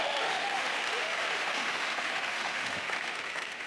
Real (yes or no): no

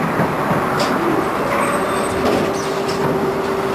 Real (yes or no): yes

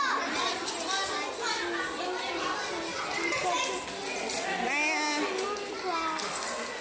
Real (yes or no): yes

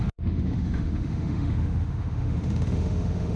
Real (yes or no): no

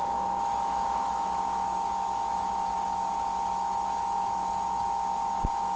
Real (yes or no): no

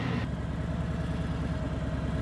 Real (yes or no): yes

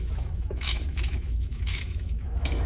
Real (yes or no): no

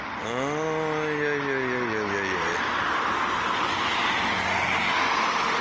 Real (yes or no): yes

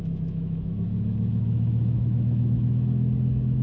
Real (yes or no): no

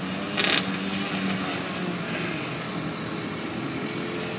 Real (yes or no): yes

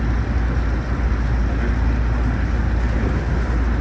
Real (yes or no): yes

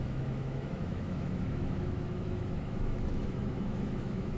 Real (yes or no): no